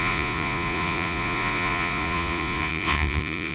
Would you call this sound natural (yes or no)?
no